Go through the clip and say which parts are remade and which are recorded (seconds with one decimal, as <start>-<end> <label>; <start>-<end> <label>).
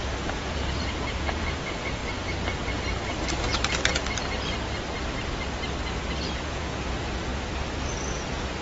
0.0-2.0 remade; 2.0-6.4 recorded; 6.4-7.3 remade; 7.3-8.1 recorded; 8.1-8.6 remade